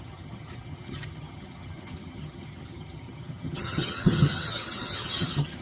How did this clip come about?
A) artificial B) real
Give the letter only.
A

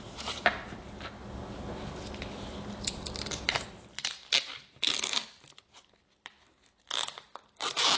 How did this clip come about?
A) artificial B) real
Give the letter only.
B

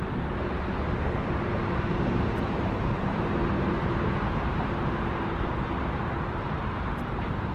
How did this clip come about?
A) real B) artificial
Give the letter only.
B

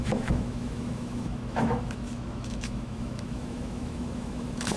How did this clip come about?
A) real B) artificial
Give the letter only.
B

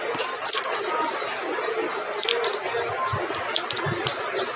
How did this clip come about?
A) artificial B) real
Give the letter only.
B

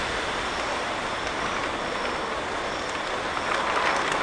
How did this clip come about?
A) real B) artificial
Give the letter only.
A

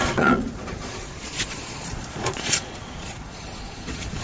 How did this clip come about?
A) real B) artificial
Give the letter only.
B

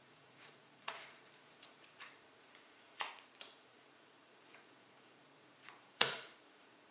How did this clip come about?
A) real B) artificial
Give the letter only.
B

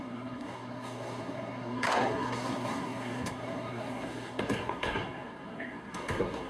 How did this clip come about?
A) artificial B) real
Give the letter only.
A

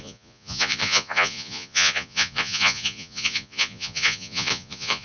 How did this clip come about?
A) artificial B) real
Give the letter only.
A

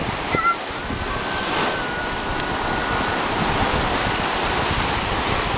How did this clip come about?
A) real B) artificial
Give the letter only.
A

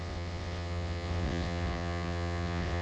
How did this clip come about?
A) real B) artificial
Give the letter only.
B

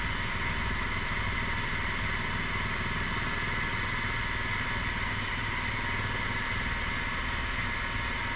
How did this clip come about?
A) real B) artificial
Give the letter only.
A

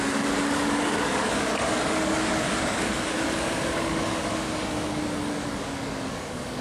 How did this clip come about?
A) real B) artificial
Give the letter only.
B